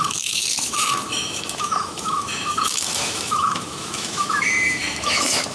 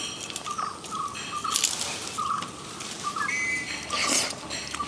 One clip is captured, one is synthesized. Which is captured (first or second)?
second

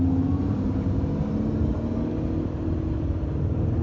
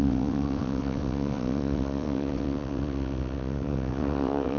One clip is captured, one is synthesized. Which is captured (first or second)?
first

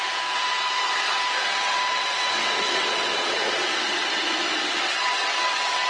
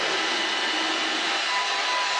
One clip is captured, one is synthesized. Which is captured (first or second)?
second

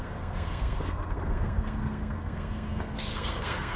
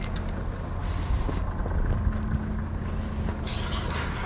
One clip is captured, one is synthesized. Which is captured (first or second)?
second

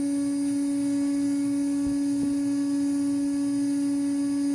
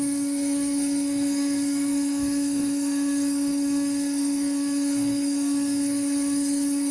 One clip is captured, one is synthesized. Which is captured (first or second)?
first